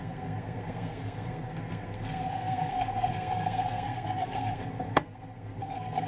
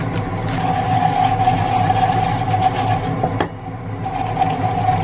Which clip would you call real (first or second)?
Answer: second